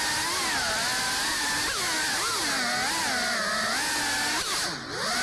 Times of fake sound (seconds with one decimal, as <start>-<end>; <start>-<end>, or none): none